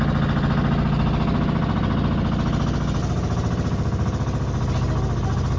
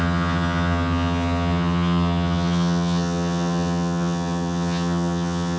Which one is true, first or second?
first